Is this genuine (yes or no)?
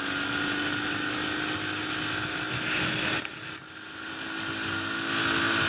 yes